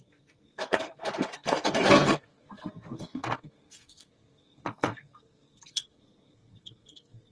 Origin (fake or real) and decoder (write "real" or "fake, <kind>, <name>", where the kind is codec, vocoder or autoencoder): fake, codec, SNAC